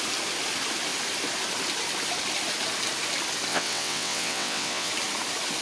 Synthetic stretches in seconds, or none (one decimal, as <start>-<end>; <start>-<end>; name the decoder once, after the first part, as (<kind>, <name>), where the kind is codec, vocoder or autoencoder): 3.5-4.9 (vocoder, WaveNeXt)